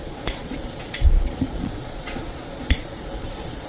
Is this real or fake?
fake